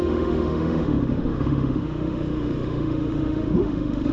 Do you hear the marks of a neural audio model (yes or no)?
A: yes